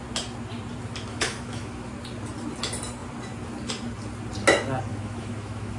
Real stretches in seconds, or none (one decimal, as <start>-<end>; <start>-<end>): 0.0-1.1; 1.9-4.9